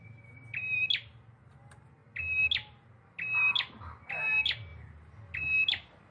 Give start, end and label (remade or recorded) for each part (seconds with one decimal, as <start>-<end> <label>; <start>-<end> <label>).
0.0-6.1 recorded